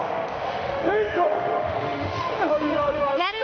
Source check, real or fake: fake